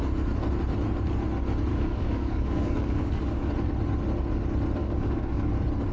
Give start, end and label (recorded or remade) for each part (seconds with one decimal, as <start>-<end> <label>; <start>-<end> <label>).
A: 0.0-1.7 recorded; 1.7-3.5 remade; 3.5-4.8 recorded; 4.8-5.5 remade; 5.5-5.9 recorded